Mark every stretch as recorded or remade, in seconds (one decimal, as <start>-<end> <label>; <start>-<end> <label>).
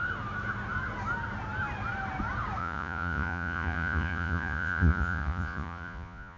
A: 0.0-2.6 recorded; 2.6-6.4 remade